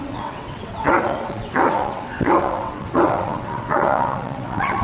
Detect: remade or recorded remade